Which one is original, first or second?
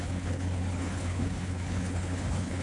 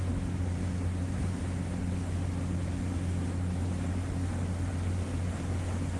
second